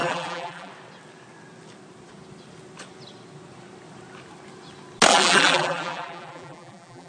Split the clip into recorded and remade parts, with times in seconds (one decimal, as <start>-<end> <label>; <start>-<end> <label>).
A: 0.0-0.7 remade; 0.7-5.1 recorded; 5.1-7.1 remade